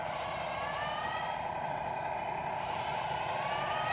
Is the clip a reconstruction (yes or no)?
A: no